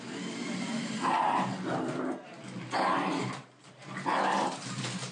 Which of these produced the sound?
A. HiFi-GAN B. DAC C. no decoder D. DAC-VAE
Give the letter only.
C